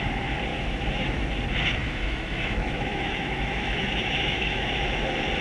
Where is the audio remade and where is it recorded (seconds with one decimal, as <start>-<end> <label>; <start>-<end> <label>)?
0.0-0.5 recorded; 0.5-1.3 remade; 1.3-1.8 recorded; 1.8-5.0 remade; 5.0-5.4 recorded